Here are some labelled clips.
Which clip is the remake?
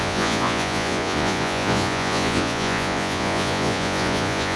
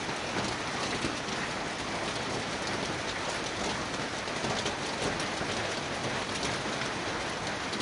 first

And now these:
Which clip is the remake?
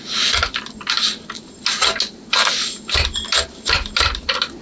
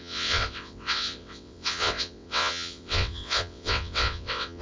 second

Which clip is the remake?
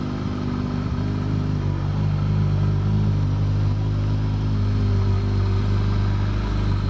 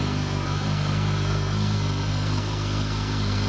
second